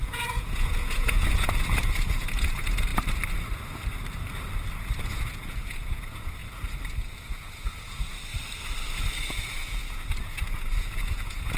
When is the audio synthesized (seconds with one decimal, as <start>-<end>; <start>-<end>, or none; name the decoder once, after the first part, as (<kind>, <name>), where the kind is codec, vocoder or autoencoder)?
0.0-2.9 (vocoder, Vocos); 5.0-6.4; 7.2-8.1; 9.2-11.6